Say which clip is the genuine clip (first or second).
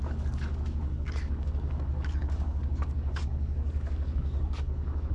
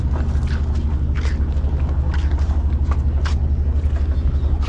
second